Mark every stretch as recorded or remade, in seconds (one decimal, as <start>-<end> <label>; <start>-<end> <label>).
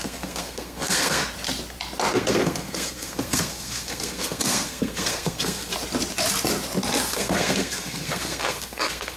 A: 0.0-1.2 remade; 1.2-2.1 recorded; 2.1-5.7 remade; 5.7-7.1 recorded; 7.1-9.2 remade